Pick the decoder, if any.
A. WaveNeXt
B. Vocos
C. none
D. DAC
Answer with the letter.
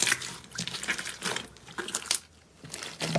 C